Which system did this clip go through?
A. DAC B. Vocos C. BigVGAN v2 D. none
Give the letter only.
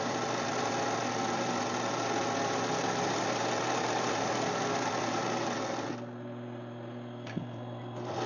D